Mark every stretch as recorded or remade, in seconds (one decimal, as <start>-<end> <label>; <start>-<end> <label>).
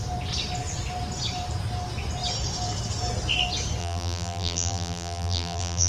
0.0-3.8 recorded; 3.8-5.9 remade